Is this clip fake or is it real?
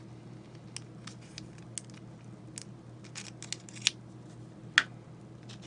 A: real